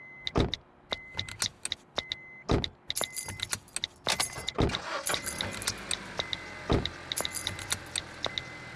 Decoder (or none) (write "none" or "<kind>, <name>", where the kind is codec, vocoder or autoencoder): none